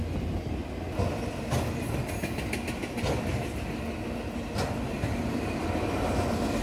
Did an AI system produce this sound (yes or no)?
no